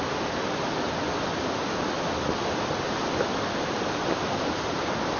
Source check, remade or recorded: recorded